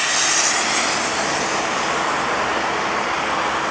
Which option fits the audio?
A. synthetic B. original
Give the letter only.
B